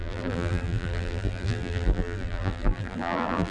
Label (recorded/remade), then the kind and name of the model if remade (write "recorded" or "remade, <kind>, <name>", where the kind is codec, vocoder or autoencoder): remade, vocoder, BigVGAN v2